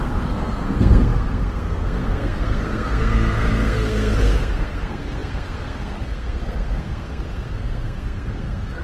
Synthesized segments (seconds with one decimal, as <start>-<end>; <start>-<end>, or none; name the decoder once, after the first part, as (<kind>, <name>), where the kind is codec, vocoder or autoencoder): 0.0-8.8 (codec, SNAC)